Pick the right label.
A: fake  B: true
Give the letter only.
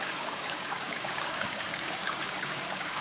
A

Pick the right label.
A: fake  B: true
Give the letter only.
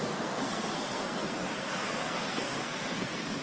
A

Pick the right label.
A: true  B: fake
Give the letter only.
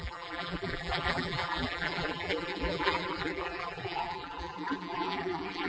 B